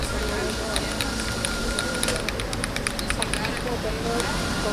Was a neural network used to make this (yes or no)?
no